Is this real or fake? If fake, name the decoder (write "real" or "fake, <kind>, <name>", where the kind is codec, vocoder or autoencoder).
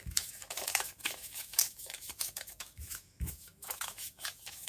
fake, autoencoder, DAC-VAE